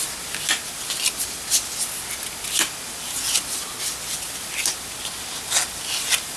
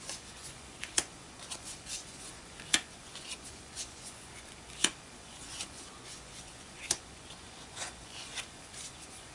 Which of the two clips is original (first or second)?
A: first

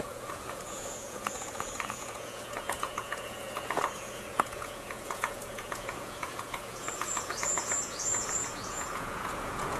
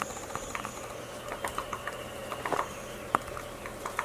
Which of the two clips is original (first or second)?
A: second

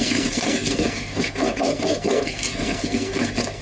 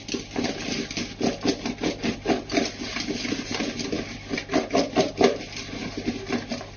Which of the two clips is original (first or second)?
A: second